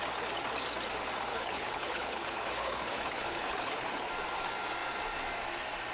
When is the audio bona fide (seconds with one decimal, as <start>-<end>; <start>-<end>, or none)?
0.0-1.3; 4.1-5.9